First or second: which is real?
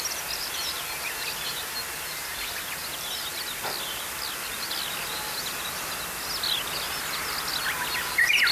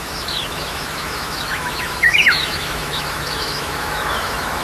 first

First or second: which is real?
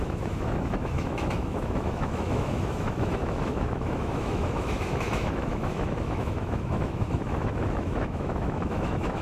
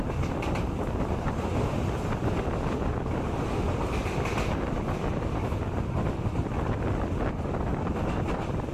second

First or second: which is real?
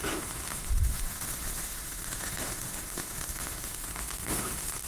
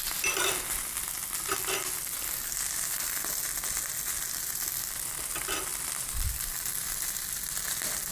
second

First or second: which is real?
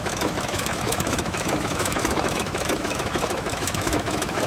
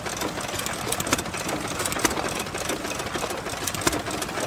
second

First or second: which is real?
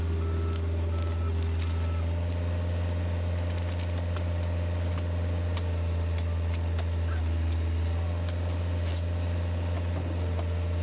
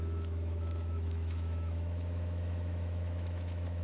first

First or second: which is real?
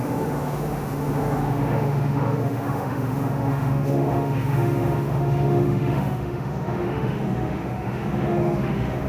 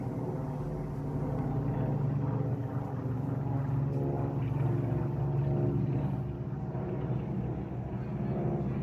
second